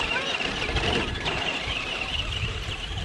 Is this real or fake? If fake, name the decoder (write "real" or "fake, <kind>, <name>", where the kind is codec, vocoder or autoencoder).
fake, vocoder, BigVGAN v2